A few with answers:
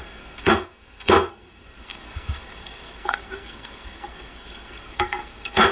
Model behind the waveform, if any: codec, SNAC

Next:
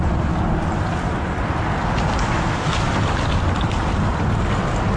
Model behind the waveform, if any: vocoder, BigVGAN v2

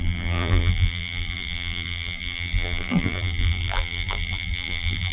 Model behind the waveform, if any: vocoder, BigVGAN v2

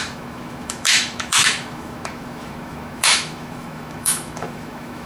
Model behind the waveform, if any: autoencoder, DAC-VAE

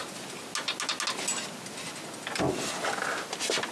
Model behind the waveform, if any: none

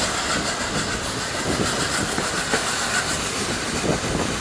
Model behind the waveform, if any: none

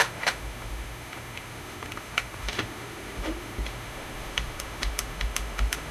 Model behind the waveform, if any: autoencoder, DAC-VAE